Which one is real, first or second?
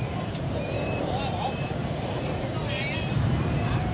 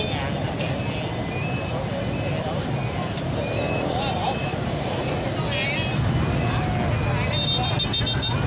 second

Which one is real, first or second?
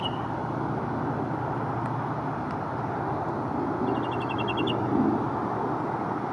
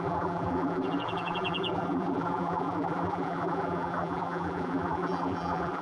first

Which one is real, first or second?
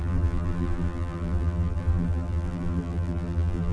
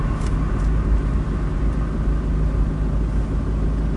second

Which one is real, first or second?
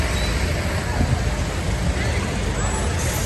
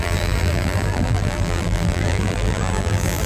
first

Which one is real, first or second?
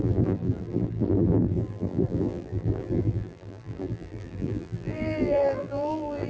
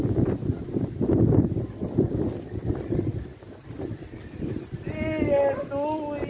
second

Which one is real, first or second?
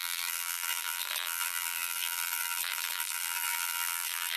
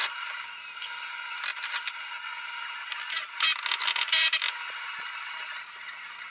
second